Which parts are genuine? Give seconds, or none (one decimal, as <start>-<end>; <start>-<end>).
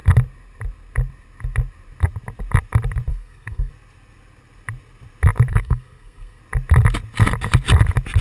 0.0-3.1; 3.7-5.5; 6.4-8.2